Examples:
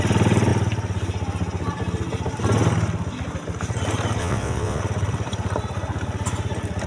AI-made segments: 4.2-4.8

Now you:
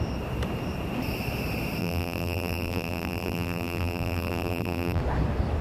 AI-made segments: 1.8-5.0